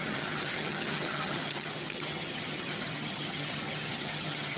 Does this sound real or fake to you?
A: fake